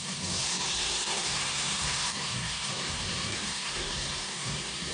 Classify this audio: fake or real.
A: fake